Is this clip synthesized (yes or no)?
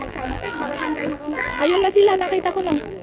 yes